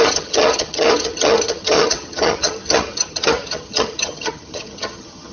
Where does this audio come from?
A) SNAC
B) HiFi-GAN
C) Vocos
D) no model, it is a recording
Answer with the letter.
B